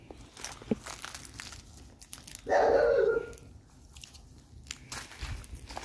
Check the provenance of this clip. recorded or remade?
recorded